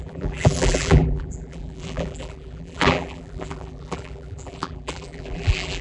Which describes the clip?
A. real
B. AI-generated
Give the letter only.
B